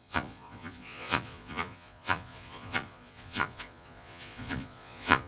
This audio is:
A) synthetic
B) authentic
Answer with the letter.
A